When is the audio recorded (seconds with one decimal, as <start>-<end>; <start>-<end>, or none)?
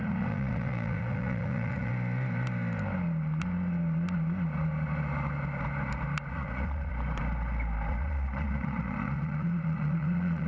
1.9-6.3; 6.9-7.9